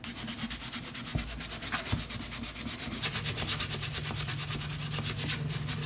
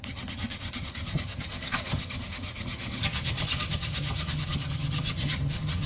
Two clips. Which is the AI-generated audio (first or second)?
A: second